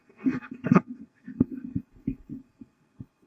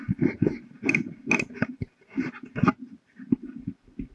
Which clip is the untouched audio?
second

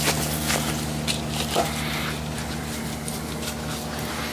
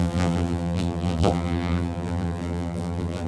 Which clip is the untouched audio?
first